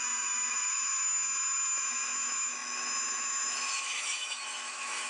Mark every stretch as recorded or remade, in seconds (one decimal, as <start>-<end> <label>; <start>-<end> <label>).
0.0-5.1 remade